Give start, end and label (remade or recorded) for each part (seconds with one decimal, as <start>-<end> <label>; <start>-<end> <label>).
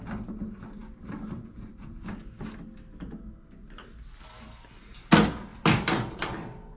0.0-6.8 recorded